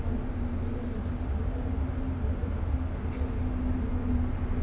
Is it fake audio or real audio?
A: real